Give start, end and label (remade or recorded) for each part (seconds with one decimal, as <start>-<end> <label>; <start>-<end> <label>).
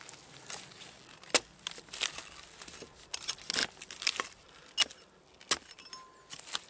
0.0-6.7 recorded